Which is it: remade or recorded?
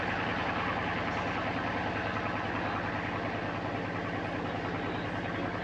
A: recorded